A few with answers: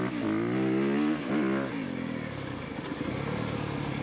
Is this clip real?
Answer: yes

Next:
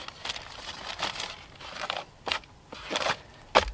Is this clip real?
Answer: yes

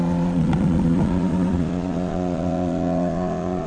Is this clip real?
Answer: no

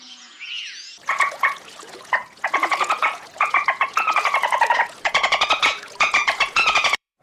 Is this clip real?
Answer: no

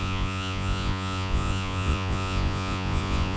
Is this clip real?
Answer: no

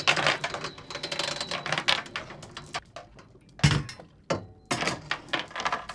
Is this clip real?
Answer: yes